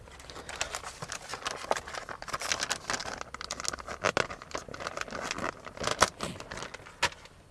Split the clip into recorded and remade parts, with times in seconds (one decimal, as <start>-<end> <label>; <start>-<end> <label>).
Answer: 0.0-7.5 recorded